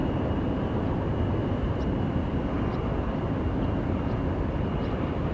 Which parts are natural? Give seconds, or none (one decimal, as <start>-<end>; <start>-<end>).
0.0-5.3